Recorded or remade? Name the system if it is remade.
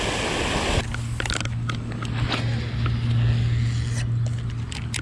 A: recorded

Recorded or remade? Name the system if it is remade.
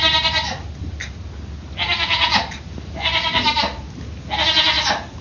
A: recorded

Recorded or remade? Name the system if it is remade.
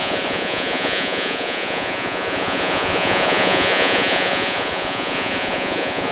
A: remade, vocoder, Vocos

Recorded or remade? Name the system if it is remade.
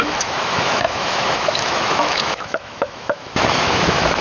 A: remade, autoencoder, DAC-VAE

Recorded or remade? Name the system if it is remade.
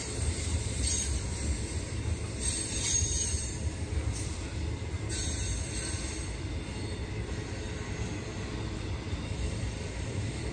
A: remade, vocoder, BigVGAN v2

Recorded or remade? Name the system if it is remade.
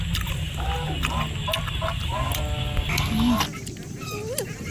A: recorded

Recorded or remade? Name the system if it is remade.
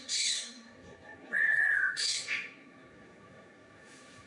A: remade, codec, SNAC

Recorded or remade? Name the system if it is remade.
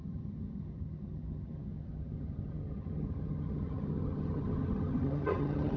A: remade, vocoder, HiFi-GAN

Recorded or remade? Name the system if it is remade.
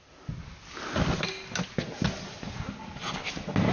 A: recorded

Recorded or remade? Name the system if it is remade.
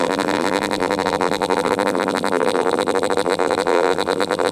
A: remade, vocoder, BigVGAN v2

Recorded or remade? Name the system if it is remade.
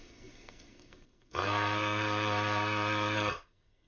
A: remade, codec, SNAC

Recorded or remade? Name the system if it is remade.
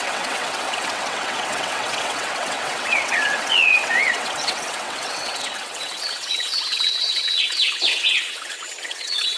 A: remade, vocoder, WaveNeXt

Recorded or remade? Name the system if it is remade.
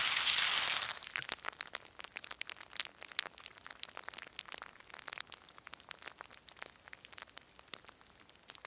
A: recorded